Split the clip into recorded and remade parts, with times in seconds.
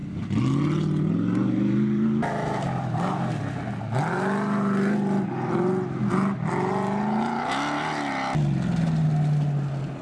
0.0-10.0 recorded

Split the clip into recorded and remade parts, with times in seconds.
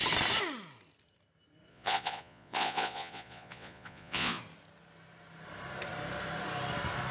0.0-1.7 recorded; 1.7-4.4 remade; 4.4-7.1 recorded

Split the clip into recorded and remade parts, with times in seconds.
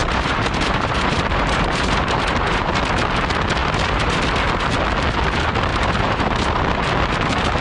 0.0-2.8 remade; 2.8-3.6 recorded; 3.6-4.2 remade; 4.2-5.7 recorded; 5.7-6.7 remade; 6.7-7.6 recorded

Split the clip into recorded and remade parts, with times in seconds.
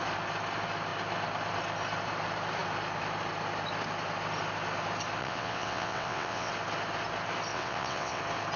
0.0-5.2 recorded; 5.2-6.5 remade; 6.5-7.5 recorded; 7.5-8.2 remade; 8.2-8.6 recorded